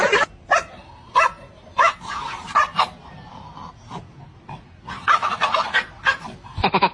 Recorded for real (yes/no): yes